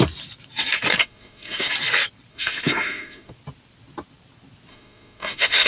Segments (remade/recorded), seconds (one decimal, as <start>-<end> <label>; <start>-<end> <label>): 0.0-1.0 recorded; 1.0-1.7 remade; 1.7-2.3 recorded; 2.3-3.3 remade; 3.3-4.7 recorded; 4.7-5.7 remade